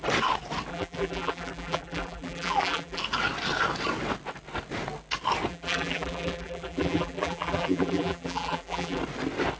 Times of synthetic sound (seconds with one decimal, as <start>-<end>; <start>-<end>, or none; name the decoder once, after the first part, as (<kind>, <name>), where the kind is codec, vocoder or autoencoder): 0.7-3.0 (vocoder, BigVGAN v2); 5.5-9.0